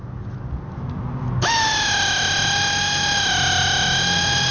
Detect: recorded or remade recorded